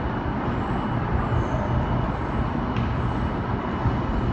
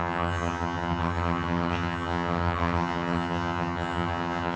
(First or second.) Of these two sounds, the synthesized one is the second